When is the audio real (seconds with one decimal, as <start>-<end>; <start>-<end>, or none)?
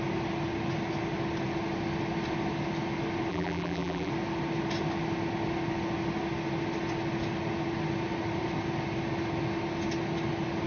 0.0-3.3; 4.1-10.7